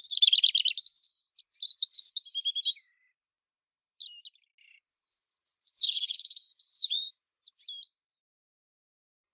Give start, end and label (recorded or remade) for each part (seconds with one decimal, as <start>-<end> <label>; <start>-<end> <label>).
0.0-5.2 recorded; 5.2-7.4 remade; 7.4-9.3 recorded